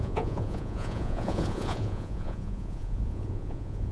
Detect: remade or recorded remade